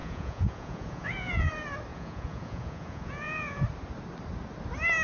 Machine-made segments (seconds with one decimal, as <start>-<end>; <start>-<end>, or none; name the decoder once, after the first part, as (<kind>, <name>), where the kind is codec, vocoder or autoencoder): 0.0-1.5 (vocoder, Vocos); 1.9-3.6